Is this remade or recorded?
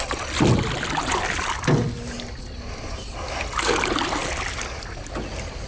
recorded